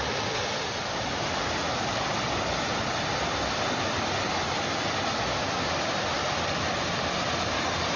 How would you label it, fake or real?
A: fake